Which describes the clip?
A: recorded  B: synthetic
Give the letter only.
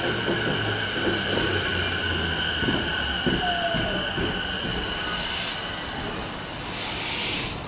A